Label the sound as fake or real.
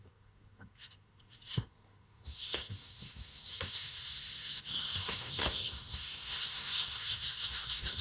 fake